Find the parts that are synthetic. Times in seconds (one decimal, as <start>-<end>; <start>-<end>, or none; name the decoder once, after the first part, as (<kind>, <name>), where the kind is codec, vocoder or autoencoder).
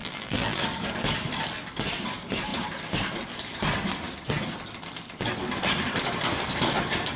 0.0-0.6 (vocoder, BigVGAN v2)